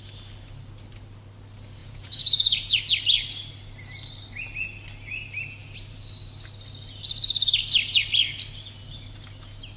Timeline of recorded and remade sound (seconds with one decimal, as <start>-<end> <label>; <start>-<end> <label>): 0.0-1.8 recorded; 1.8-2.8 remade; 2.8-9.8 recorded